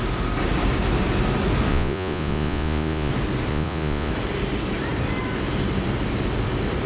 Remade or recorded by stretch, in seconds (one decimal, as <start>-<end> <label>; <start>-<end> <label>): 0.0-1.7 recorded; 1.7-3.1 remade; 3.1-3.5 recorded; 3.5-4.1 remade; 4.1-6.9 recorded